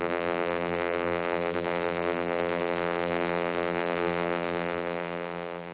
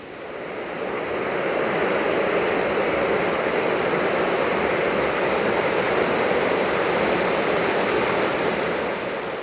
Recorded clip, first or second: second